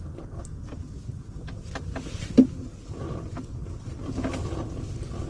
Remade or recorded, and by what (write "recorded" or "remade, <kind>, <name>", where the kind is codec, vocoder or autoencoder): recorded